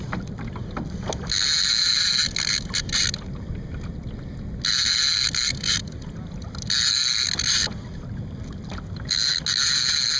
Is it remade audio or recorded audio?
recorded